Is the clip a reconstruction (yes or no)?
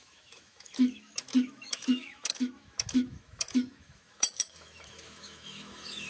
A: yes